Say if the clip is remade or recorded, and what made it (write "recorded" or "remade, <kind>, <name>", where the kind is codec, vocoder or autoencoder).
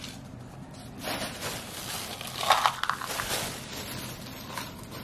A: recorded